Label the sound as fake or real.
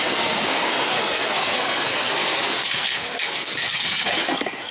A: fake